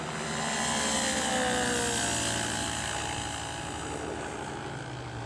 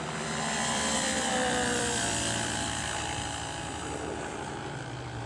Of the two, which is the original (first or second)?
first